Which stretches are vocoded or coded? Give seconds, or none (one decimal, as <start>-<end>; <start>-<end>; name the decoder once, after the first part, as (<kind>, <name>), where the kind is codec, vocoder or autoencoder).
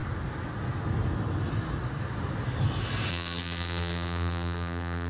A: 3.1-5.1 (vocoder, BigVGAN v2)